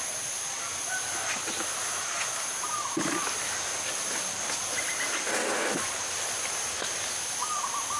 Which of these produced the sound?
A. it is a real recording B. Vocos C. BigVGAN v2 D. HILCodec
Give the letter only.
A